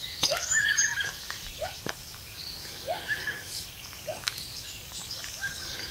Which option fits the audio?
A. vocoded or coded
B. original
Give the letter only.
A